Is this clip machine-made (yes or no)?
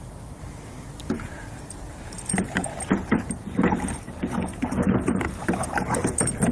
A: yes